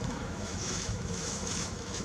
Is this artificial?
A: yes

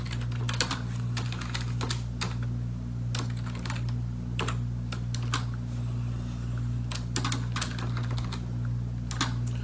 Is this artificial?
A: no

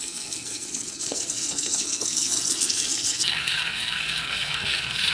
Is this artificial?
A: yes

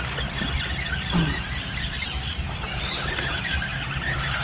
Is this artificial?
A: no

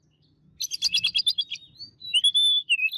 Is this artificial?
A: no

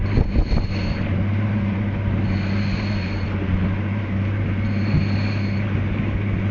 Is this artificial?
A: no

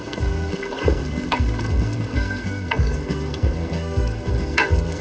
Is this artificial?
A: yes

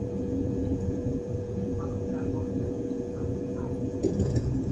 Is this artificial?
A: yes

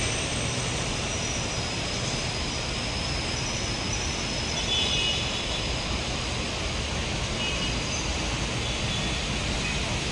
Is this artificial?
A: no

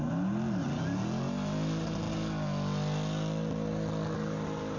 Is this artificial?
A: no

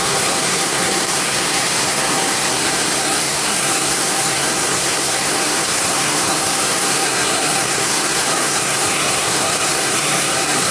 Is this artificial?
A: yes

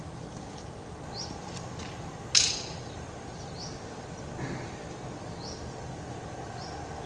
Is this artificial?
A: no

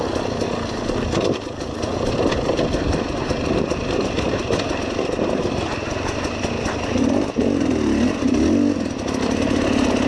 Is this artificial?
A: no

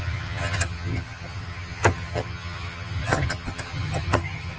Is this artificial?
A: yes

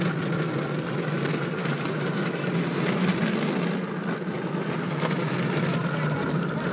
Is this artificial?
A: no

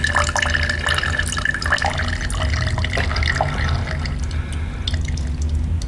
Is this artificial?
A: no